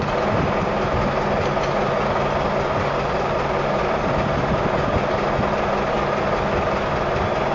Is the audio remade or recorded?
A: recorded